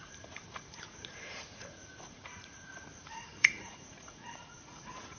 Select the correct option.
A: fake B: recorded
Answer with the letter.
A